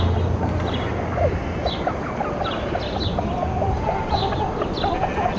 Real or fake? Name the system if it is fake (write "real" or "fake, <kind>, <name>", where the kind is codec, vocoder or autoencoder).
real